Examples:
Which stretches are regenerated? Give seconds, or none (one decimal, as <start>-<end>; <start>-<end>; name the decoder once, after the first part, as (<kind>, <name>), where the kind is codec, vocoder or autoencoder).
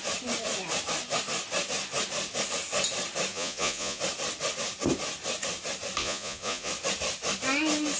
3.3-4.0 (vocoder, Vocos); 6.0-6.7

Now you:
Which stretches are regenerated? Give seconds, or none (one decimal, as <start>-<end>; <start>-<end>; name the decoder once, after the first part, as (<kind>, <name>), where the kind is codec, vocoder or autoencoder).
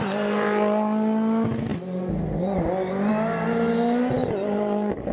none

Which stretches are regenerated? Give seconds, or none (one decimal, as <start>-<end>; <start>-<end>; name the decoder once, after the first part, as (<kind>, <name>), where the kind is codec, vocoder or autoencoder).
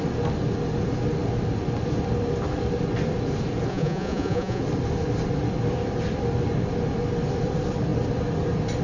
3.7-4.6 (vocoder, Vocos)